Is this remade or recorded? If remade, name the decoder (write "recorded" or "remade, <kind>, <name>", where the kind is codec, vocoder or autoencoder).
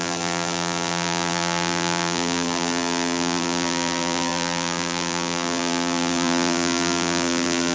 remade, vocoder, BigVGAN v2